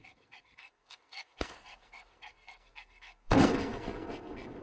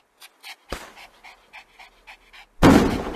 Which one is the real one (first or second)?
second